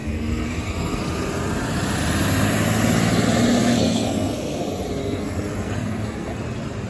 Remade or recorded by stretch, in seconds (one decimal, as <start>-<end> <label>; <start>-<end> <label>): 0.0-1.0 remade; 1.0-3.6 recorded; 3.6-4.6 remade; 4.6-5.0 recorded; 5.0-6.4 remade; 6.4-6.9 recorded